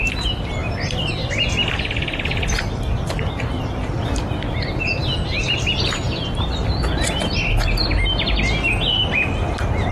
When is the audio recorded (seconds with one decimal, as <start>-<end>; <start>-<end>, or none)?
0.0-9.9